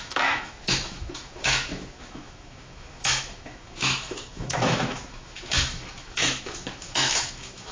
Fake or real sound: fake